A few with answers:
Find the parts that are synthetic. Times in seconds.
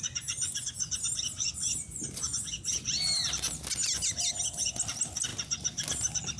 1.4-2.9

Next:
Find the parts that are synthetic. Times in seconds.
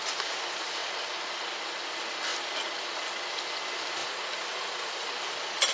4.0-5.1